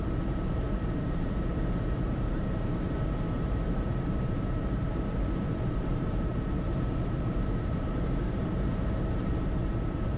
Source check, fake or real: fake